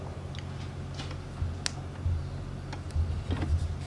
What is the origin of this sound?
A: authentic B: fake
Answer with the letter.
A